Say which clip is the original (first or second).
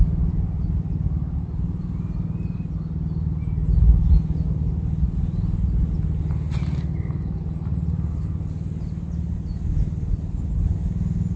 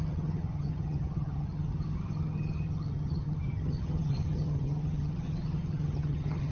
first